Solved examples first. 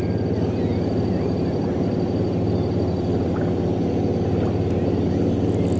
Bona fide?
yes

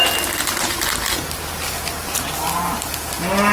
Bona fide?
yes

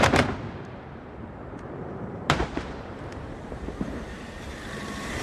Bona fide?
no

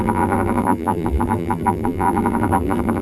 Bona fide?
no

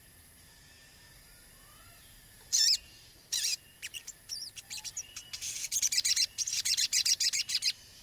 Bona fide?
no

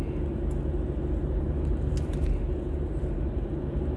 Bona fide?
yes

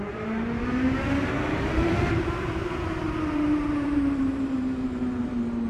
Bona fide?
no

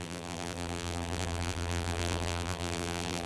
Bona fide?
no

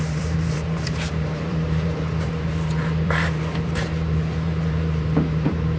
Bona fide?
no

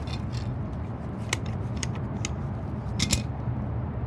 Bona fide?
yes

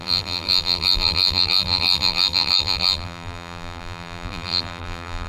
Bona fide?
no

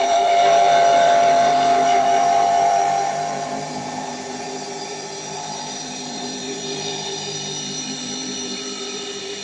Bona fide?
no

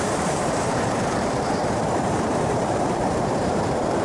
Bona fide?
no